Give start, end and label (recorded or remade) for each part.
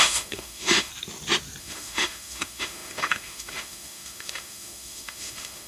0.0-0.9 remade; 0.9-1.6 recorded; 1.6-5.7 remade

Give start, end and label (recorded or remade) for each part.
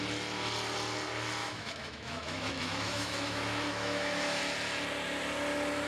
0.0-1.4 recorded; 1.4-4.4 remade; 4.4-5.9 recorded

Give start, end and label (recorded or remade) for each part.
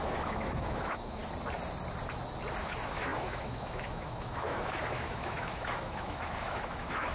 0.0-1.2 remade; 1.2-2.6 recorded; 2.6-7.1 remade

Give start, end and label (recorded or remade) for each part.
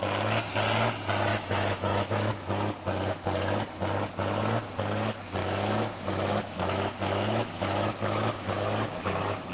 0.0-1.3 recorded; 1.3-2.3 remade; 2.3-5.4 recorded; 5.4-9.1 remade; 9.1-9.5 recorded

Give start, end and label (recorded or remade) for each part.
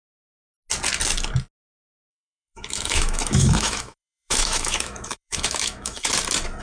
0.0-2.1 recorded; 2.1-6.1 remade; 6.1-6.6 recorded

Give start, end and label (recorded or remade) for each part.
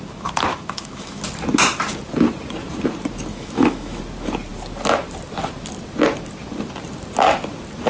0.0-0.5 recorded; 0.5-1.2 remade; 1.2-3.3 recorded; 3.3-4.0 remade; 4.0-7.9 recorded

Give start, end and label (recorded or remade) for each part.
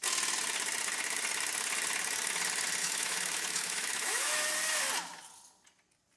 0.0-2.8 recorded; 2.8-4.4 remade; 4.4-6.2 recorded